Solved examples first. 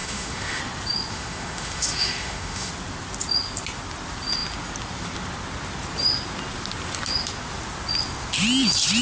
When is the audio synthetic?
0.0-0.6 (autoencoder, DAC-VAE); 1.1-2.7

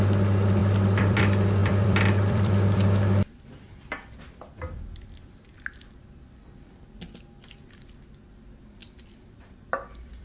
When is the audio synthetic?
0.6-1.2 (vocoder, BigVGAN v2); 1.6-5.5; 8.8-10.2

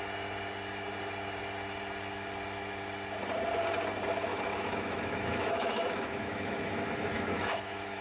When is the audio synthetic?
4.3-8.0 (autoencoder, DAC-VAE)

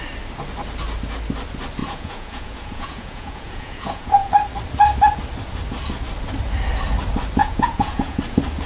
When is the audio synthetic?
1.8-4.3 (vocoder, Vocos); 7.4-8.2

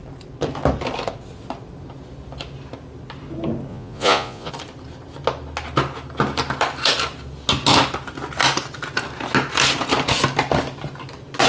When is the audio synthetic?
3.7-4.5 (vocoder, Vocos)

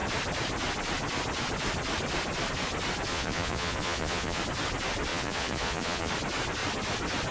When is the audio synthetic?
3.1-4.4 (vocoder, Vocos); 5.1-6.1

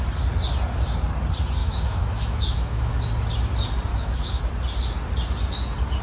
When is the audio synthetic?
1.6-2.9 (autoencoder, DAC-VAE); 3.9-4.4

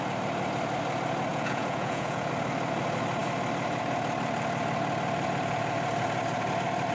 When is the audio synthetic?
1.3-2.3 (vocoder, Vocos)